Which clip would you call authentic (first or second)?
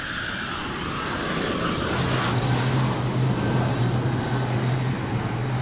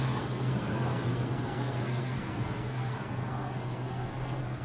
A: first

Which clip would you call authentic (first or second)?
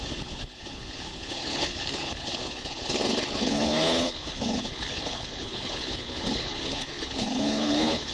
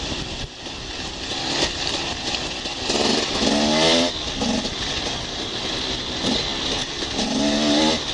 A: second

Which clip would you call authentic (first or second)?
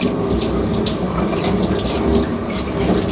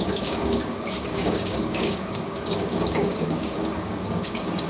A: first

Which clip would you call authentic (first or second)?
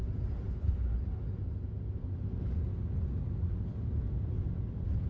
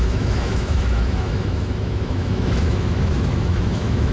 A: first